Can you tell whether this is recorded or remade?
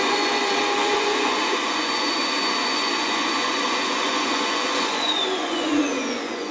remade